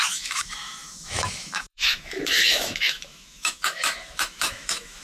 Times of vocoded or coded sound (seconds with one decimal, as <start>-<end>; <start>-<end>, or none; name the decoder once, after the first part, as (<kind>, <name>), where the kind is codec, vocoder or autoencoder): 0.0-5.0 (autoencoder, DAC-VAE)